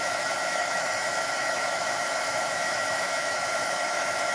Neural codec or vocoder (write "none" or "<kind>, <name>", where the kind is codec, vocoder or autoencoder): autoencoder, DAC-VAE